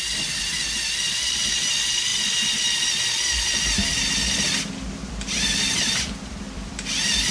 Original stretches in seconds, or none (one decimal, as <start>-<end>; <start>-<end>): none